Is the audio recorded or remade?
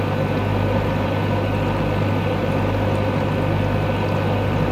recorded